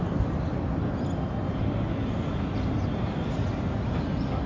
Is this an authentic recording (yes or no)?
yes